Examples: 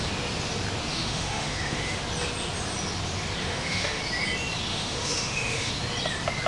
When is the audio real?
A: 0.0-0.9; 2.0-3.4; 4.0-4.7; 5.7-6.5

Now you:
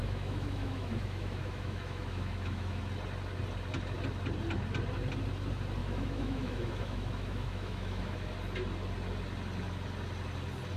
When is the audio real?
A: 2.8-5.8; 8.3-10.8